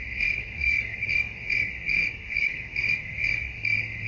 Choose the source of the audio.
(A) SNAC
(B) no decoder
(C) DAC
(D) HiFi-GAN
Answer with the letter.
A